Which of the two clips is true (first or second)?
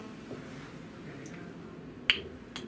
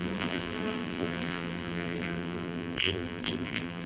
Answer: first